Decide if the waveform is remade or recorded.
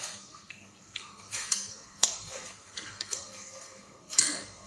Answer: remade